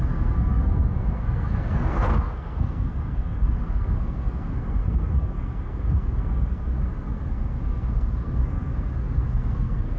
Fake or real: fake